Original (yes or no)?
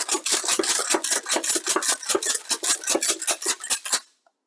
yes